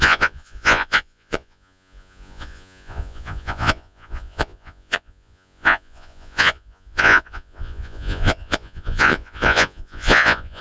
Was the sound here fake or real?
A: fake